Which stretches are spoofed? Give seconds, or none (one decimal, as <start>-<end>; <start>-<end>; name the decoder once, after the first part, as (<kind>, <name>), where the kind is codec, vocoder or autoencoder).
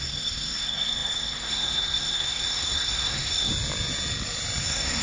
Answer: 0.0-3.5 (codec, SNAC); 4.6-5.0